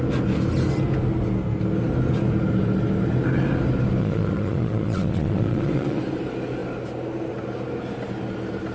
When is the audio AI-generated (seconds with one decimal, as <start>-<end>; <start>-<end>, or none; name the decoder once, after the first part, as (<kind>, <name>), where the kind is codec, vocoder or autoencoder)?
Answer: 4.0-6.0 (vocoder, Vocos)